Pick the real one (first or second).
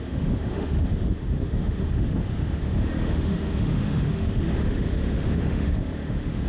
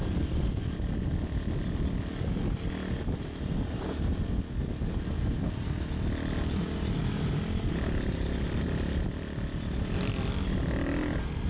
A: second